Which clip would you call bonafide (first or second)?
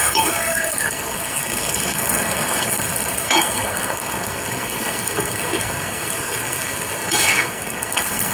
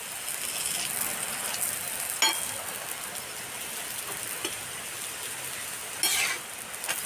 second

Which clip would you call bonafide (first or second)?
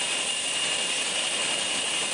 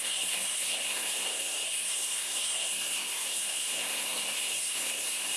first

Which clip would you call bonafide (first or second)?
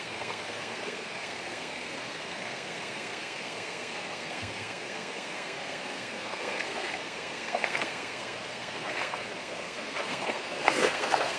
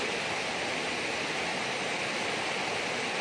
second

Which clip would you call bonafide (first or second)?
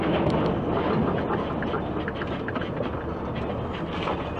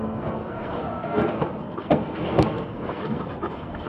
first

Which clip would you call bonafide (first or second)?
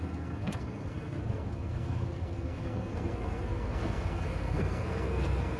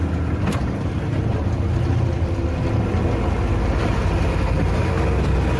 second